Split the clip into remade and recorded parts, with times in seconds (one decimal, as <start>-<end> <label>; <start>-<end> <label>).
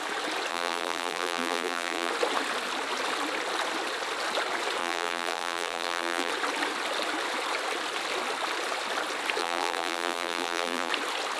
0.0-0.5 recorded; 0.5-2.1 remade; 2.1-4.8 recorded; 4.8-6.3 remade; 6.3-9.4 recorded; 9.4-10.9 remade; 10.9-11.4 recorded